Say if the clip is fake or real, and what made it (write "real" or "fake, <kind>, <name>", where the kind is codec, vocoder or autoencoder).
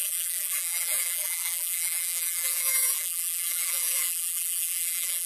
fake, vocoder, BigVGAN v2